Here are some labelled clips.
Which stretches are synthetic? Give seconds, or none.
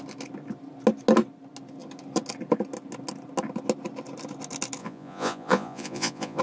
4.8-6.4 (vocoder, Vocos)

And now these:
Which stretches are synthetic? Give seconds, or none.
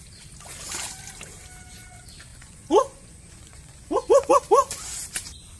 2.3-4.3 (vocoder, Vocos)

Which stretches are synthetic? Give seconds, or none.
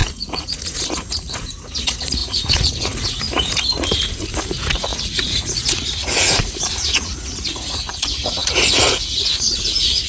0.0-10.1 (vocoder, Vocos)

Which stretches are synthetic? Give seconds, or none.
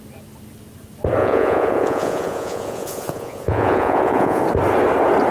1.2-4.4 (vocoder, Vocos)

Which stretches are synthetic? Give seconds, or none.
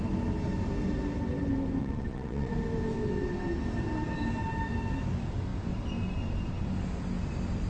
1.8-2.5 (vocoder, Vocos)